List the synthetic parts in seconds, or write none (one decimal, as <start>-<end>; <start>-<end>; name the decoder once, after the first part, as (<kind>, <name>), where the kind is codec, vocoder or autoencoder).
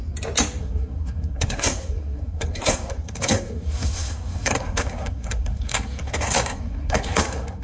0.6-7.6 (codec, SNAC)